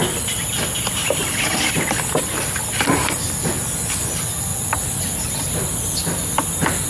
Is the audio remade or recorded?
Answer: recorded